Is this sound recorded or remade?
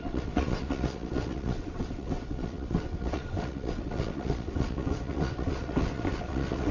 remade